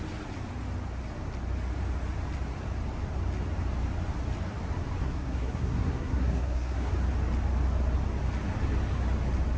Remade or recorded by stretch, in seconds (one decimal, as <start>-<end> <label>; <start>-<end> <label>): 0.0-5.0 recorded; 5.0-6.9 remade; 6.9-9.6 recorded